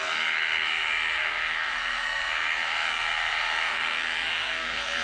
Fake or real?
fake